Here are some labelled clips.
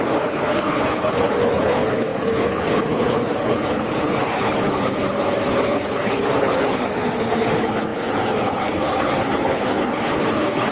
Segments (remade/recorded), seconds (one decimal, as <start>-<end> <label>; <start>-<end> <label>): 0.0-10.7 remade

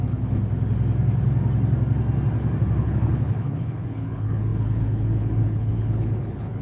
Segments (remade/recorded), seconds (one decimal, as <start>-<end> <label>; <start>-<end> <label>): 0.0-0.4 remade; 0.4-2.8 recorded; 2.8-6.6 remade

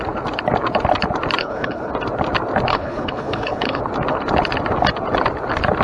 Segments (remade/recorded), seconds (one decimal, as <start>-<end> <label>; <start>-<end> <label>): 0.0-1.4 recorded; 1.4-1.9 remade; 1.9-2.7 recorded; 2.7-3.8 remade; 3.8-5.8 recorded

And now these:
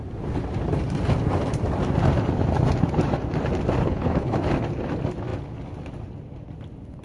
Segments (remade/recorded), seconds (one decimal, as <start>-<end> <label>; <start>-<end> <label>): 0.0-3.8 recorded; 3.8-4.4 remade; 4.4-7.0 recorded

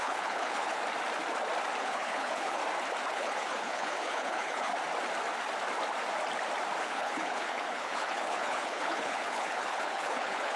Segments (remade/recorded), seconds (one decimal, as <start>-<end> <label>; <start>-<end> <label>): 0.0-0.8 remade; 0.8-1.8 recorded; 1.8-2.6 remade; 2.6-3.1 recorded; 3.1-4.7 remade; 4.7-6.8 recorded; 6.8-10.6 remade

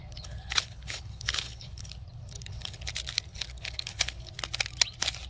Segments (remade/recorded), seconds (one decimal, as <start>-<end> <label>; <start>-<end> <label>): 0.0-2.9 remade; 2.9-3.3 recorded; 3.3-4.3 remade; 4.3-5.3 recorded

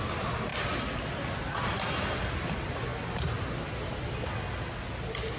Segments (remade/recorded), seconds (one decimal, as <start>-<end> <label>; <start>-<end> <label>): 0.0-5.4 recorded